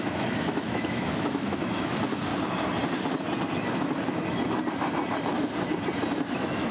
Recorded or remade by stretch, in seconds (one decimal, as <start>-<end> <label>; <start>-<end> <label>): 0.0-2.3 remade; 2.3-6.3 recorded; 6.3-6.7 remade